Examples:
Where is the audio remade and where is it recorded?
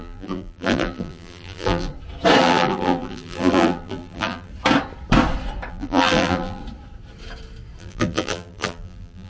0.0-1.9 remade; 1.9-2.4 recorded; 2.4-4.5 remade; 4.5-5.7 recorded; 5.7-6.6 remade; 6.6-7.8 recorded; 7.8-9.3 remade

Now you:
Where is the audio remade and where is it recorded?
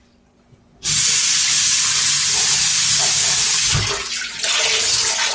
0.0-5.3 recorded